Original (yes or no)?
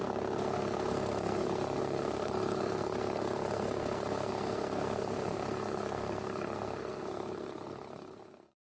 no